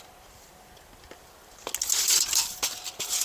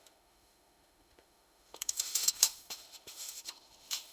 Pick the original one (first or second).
first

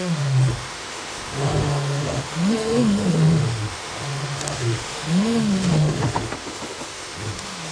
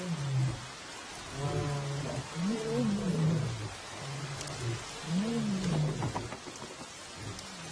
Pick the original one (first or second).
second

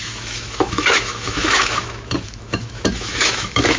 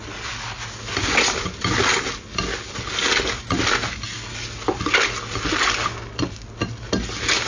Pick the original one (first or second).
second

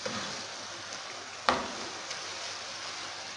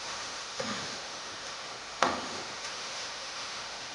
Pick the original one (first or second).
first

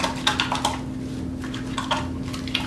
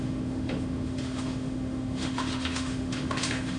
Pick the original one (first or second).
first